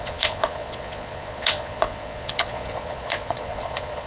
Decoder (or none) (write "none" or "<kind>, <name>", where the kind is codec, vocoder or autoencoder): vocoder, Vocos